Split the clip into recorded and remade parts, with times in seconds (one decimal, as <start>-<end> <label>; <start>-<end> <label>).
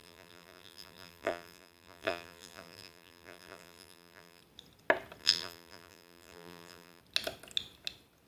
0.0-4.4 remade; 4.4-5.2 recorded; 5.2-7.0 remade; 7.0-8.3 recorded